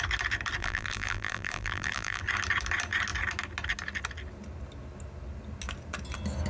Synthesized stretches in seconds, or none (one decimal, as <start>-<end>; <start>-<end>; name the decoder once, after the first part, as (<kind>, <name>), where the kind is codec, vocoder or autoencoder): 0.6-2.2 (vocoder, BigVGAN v2)